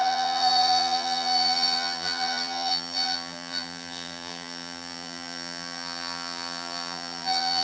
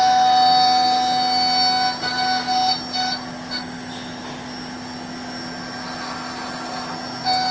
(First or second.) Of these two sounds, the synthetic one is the first